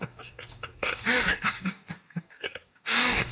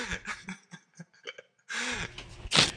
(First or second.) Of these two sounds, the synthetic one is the first